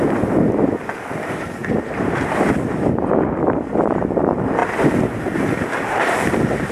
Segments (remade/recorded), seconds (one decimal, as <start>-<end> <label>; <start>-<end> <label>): 0.0-6.7 recorded